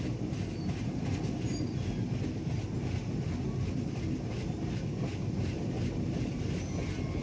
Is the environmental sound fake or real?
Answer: real